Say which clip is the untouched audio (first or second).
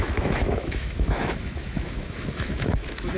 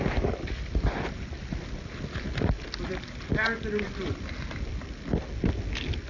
second